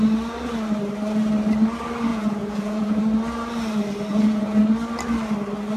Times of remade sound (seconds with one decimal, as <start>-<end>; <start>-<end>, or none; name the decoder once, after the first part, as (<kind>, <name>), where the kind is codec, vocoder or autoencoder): 2.1-3.0 (vocoder, Vocos); 4.1-4.6

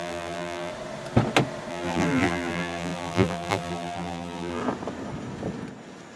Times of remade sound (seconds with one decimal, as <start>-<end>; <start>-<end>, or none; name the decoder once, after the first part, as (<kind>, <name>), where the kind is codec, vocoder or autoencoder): 0.0-0.7 (vocoder, BigVGAN v2); 1.7-4.6

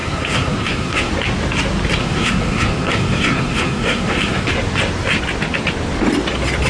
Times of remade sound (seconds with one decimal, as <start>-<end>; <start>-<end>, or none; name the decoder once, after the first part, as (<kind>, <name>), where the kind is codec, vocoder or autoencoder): 0.0-1.1 (codec, SNAC); 2.0-4.5

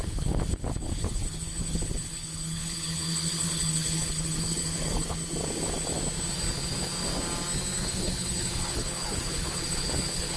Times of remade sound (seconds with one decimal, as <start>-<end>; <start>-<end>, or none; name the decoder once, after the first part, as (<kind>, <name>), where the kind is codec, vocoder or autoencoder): 0.0-5.2 (codec, HILCodec); 7.8-10.4

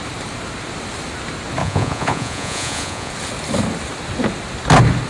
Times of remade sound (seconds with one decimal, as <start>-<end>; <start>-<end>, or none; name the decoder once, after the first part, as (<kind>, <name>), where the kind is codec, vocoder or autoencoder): 1.6-3.1 (vocoder, Vocos)

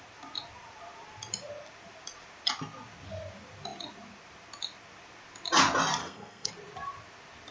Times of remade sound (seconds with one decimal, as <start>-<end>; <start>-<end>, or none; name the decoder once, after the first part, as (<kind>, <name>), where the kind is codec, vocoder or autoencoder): 6.0-6.5 (codec, SNAC)

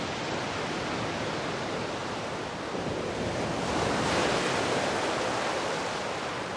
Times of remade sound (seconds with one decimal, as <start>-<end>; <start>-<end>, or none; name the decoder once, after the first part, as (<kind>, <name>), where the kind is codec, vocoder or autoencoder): none